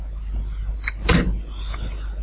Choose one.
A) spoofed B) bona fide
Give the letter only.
B